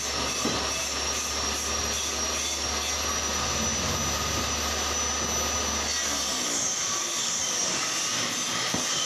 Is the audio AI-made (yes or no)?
no